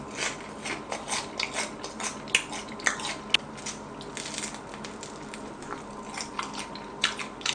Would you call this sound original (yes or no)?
yes